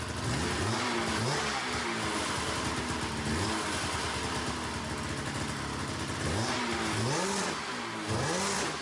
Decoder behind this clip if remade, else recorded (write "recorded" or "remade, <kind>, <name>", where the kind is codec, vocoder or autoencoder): recorded